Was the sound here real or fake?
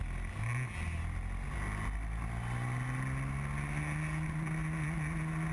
real